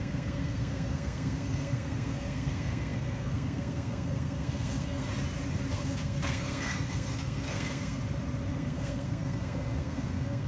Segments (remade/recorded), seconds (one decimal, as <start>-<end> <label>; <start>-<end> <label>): 0.0-5.1 remade; 5.1-5.7 recorded; 5.7-8.0 remade; 8.0-8.5 recorded; 8.5-10.5 remade